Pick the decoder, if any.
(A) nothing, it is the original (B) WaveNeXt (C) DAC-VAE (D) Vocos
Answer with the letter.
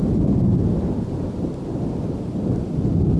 A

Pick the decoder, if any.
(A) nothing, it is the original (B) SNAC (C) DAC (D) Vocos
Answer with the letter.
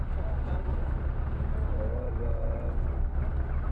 A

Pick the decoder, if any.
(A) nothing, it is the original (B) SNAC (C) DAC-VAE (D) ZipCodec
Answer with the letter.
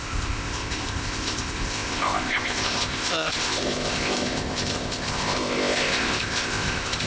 D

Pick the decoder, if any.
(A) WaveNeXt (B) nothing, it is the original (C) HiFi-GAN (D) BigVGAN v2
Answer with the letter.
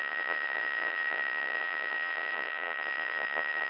A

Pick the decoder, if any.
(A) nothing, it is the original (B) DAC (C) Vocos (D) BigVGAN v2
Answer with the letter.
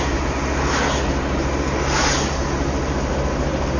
A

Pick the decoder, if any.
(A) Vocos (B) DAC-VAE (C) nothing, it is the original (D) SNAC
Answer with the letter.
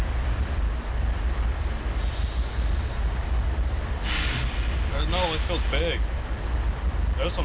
C